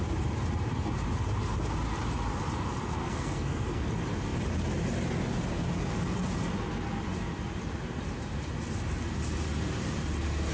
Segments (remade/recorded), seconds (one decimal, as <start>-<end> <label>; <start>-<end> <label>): 0.0-3.0 recorded; 3.0-3.9 remade; 3.9-10.5 recorded